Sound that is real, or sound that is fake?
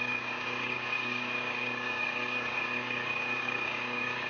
fake